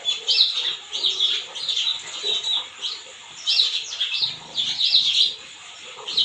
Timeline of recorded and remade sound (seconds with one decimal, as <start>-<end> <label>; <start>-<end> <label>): 0.0-1.9 remade; 1.9-3.3 recorded; 3.3-6.2 remade